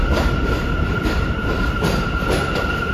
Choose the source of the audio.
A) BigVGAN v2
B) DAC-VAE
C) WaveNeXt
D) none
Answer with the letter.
A